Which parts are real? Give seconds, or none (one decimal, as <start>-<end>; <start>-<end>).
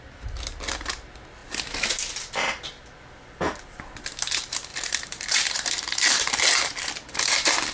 0.0-4.7; 6.3-7.7